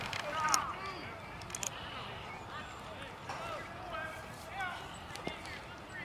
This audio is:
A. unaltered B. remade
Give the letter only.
A